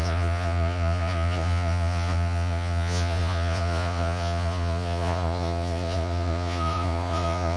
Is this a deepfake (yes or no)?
yes